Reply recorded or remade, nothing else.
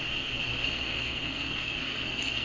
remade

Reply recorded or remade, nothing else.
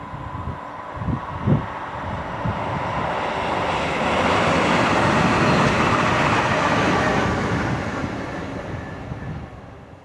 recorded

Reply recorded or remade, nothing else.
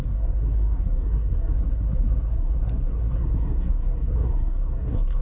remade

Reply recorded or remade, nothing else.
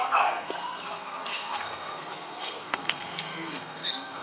remade